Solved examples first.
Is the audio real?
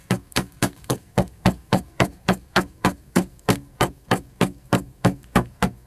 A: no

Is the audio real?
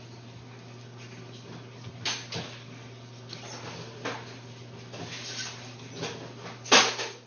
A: yes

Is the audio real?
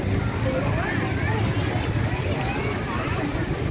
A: yes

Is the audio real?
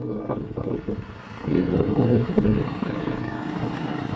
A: no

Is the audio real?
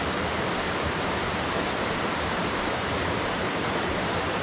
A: no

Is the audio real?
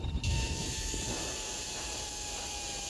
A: no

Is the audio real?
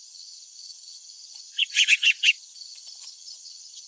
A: no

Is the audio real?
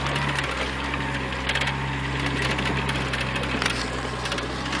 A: yes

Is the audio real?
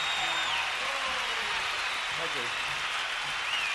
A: yes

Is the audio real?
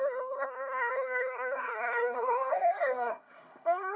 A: no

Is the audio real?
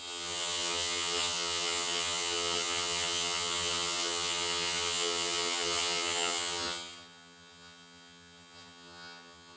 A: no